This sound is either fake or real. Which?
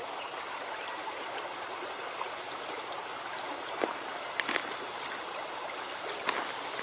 real